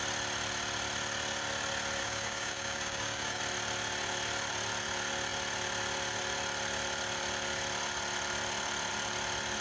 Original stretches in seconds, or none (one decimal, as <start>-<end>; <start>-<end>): 0.0-2.0; 3.4-9.6